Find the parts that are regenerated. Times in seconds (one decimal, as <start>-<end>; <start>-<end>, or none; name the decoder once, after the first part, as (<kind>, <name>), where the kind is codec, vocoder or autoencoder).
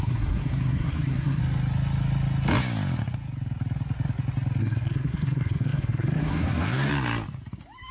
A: 0.0-1.4 (codec, SNAC); 4.6-6.9